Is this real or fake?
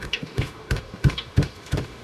fake